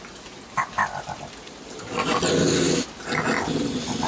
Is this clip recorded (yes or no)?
yes